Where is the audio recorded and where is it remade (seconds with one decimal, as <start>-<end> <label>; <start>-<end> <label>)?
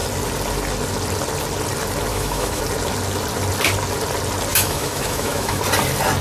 0.0-2.1 recorded; 2.1-2.6 remade; 2.6-4.5 recorded; 4.5-5.6 remade; 5.6-6.2 recorded